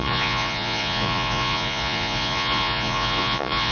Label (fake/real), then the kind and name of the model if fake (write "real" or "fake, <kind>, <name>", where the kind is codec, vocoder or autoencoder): fake, vocoder, Vocos